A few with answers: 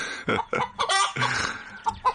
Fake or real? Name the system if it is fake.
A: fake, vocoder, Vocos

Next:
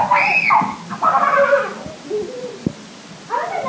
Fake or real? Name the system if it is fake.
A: real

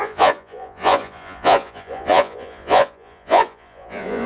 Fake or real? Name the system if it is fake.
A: fake, vocoder, Vocos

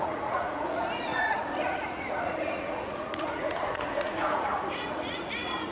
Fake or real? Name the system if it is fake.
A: fake, vocoder, Vocos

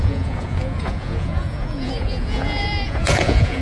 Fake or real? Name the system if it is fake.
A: fake, vocoder, Vocos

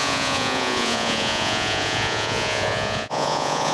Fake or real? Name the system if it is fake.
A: fake, vocoder, Vocos